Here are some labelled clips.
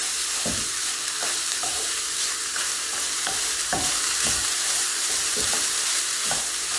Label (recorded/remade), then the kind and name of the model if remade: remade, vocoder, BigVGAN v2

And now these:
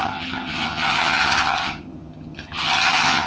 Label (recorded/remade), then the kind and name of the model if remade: remade, vocoder, HiFi-GAN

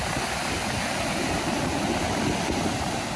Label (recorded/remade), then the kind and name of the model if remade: recorded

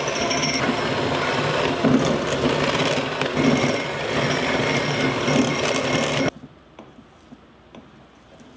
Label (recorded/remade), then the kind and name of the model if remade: recorded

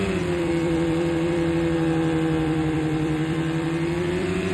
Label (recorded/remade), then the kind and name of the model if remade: remade, vocoder, BigVGAN v2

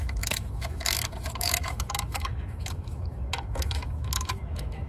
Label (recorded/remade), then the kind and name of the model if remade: remade, autoencoder, DAC-VAE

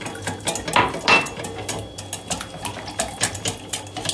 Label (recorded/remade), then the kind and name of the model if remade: recorded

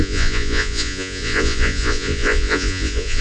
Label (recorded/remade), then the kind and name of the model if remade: remade, vocoder, Vocos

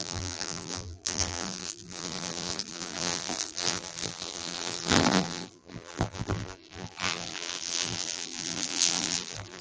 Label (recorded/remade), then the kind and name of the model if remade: remade, vocoder, BigVGAN v2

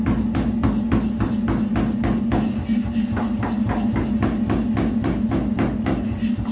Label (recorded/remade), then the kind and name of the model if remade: recorded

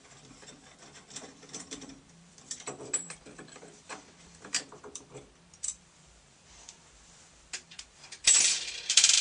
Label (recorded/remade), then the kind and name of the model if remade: remade, vocoder, BigVGAN v2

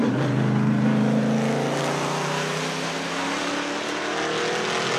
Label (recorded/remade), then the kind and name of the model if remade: recorded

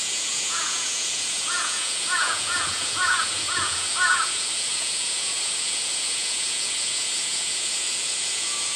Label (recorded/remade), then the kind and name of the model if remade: remade, vocoder, Vocos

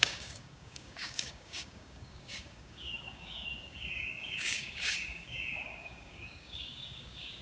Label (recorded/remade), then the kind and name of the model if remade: remade, codec, DAC